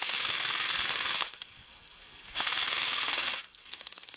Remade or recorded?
remade